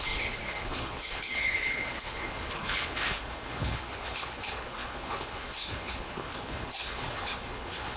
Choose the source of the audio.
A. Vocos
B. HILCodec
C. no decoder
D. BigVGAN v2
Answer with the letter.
B